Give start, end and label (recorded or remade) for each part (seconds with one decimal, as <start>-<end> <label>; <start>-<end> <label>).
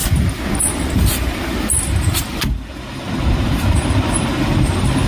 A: 0.0-0.7 recorded; 0.7-5.1 remade